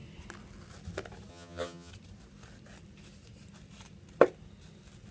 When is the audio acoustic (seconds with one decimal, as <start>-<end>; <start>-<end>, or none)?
0.0-1.3; 1.9-5.1